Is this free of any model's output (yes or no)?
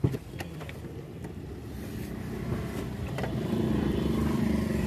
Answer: no